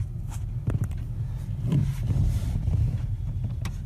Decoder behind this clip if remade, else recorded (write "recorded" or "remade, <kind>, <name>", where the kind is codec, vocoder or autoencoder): remade, vocoder, BigVGAN v2